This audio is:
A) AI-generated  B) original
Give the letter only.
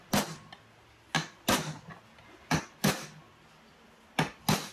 B